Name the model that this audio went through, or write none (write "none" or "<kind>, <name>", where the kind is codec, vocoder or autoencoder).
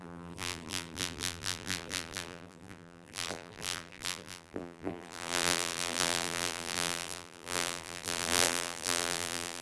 vocoder, BigVGAN v2